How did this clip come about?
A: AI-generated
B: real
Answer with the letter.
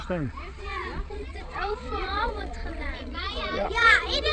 A